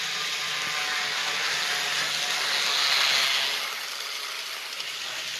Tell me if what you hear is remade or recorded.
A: recorded